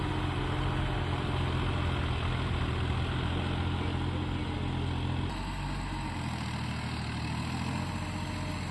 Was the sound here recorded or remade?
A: recorded